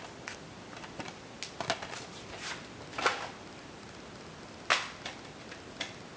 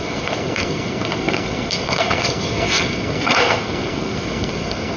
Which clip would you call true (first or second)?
first